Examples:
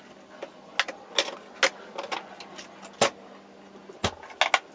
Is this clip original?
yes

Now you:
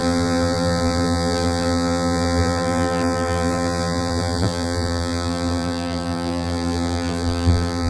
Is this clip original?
no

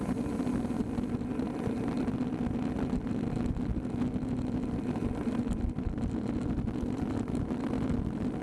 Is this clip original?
yes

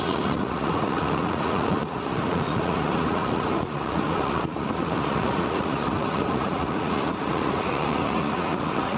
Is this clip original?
no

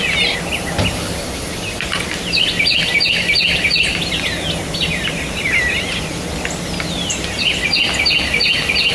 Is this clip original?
yes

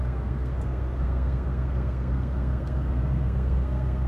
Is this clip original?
no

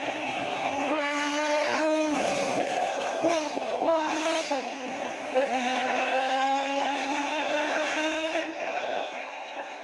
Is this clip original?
no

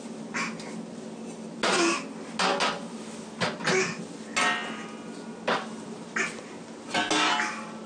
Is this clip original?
yes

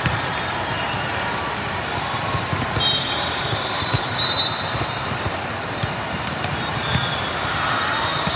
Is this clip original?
no